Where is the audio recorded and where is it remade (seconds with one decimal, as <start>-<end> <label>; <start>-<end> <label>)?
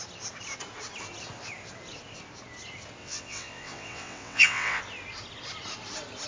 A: 0.0-3.0 recorded; 3.0-4.8 remade; 4.8-6.3 recorded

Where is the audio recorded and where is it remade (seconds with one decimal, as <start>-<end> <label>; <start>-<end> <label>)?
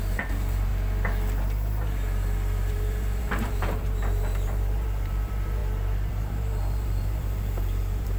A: 0.0-0.7 remade; 0.7-2.7 recorded; 2.7-8.2 remade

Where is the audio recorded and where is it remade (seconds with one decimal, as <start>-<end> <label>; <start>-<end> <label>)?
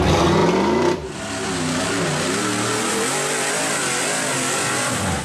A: 0.0-5.2 recorded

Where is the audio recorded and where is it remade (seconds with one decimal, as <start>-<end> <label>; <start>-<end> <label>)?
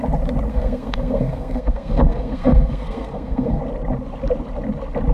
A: 0.0-0.5 recorded; 0.5-3.6 remade; 3.6-5.1 recorded